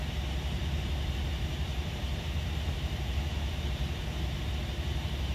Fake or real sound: fake